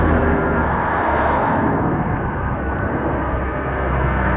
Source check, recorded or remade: remade